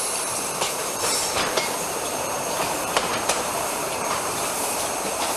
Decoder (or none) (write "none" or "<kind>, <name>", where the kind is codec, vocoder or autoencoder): vocoder, BigVGAN v2